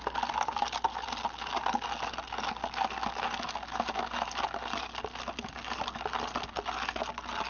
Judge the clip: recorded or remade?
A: recorded